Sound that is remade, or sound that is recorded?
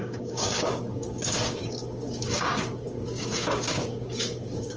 remade